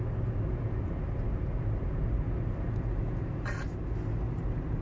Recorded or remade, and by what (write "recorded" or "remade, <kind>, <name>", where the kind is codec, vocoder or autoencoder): recorded